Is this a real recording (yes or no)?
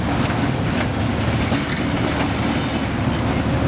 yes